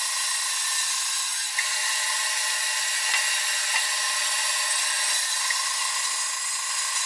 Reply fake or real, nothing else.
real